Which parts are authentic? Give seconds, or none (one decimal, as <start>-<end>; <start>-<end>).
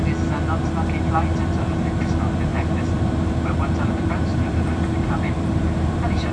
0.0-2.5